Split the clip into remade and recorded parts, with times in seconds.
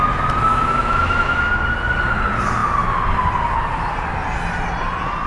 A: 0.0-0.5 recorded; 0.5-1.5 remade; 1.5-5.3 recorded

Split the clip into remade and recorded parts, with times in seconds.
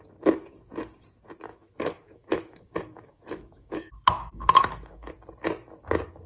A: 0.0-1.5 recorded; 1.5-5.1 remade; 5.1-6.3 recorded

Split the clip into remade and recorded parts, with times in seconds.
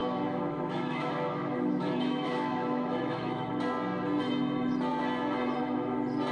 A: 0.0-3.5 remade; 3.5-6.3 recorded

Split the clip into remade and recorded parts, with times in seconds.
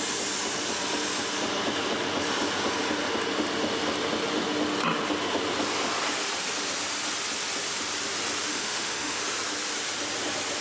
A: 0.0-8.5 recorded; 8.5-9.2 remade; 9.2-10.6 recorded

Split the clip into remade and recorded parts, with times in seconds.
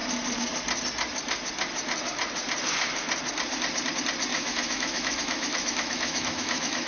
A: 0.0-4.3 recorded; 4.3-6.9 remade